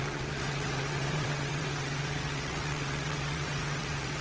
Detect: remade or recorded remade